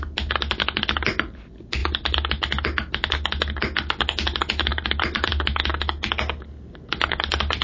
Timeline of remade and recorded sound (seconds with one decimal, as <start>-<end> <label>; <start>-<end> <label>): 0.0-4.7 recorded; 4.7-5.3 remade; 5.3-7.6 recorded